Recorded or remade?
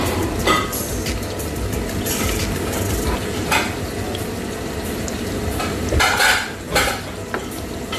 recorded